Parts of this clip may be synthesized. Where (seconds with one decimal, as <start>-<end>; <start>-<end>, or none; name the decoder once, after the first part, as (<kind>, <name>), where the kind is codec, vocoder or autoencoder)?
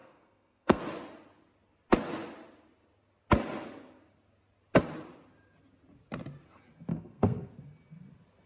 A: 0.0-0.8 (codec, SNAC); 6.9-7.5